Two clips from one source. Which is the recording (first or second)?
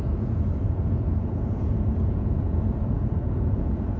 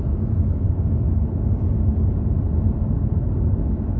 second